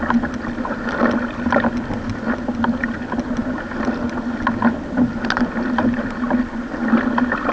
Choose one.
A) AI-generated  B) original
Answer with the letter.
B